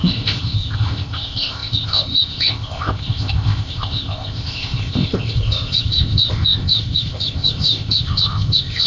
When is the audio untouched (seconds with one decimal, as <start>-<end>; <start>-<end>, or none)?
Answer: none